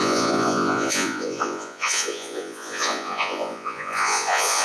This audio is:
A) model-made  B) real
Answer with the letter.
A